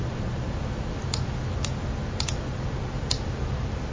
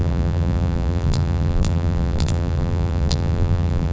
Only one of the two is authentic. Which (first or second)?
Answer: first